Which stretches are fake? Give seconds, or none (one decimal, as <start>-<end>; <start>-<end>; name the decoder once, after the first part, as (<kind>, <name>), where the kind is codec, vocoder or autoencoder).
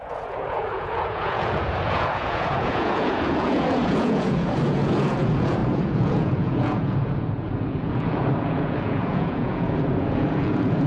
0.0-10.9 (vocoder, Vocos)